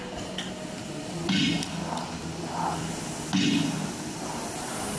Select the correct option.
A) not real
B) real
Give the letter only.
B